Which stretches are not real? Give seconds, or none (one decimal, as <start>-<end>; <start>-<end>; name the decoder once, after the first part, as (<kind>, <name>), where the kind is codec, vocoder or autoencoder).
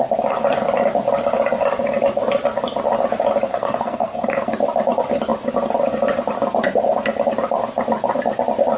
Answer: 3.5-4.5 (codec, SNAC)